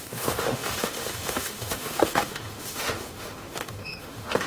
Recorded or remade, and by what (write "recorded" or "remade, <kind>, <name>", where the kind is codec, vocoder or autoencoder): remade, autoencoder, DAC-VAE